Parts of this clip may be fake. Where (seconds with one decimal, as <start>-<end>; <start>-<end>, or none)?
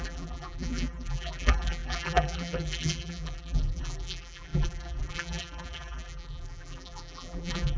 0.0-7.8